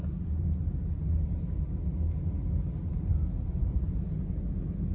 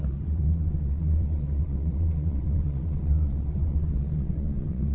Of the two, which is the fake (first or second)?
second